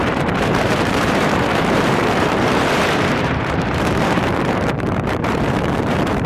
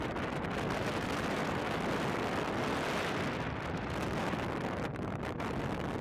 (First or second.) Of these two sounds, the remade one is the first